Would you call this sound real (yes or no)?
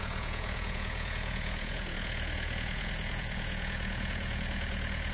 no